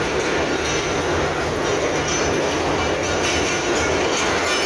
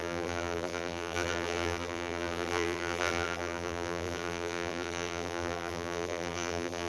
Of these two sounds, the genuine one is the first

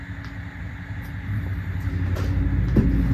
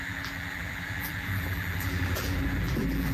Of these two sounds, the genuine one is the first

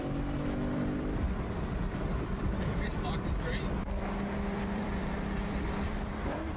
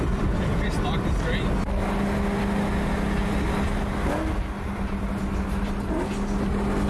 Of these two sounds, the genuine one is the second